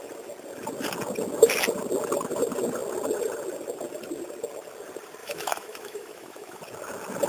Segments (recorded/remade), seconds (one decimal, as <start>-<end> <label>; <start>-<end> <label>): 0.0-5.2 recorded; 5.2-6.6 remade; 6.6-7.3 recorded